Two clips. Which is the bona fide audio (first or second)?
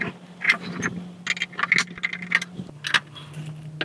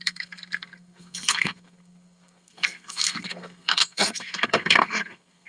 first